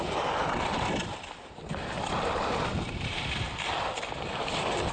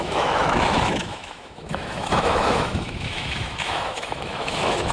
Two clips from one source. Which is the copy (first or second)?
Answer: second